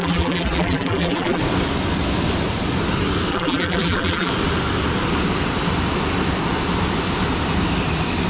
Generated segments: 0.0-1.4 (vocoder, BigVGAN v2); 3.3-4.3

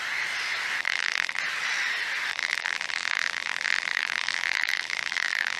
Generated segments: 0.8-1.4 (vocoder, BigVGAN v2); 2.3-5.6

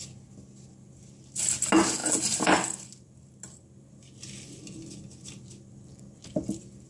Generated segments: 2.0-4.0 (vocoder, BigVGAN v2)

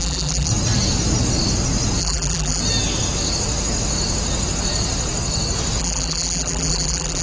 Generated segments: 0.0-0.5 (vocoder, BigVGAN v2); 2.0-2.6; 5.8-7.2

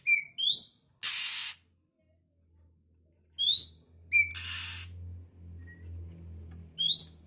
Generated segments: none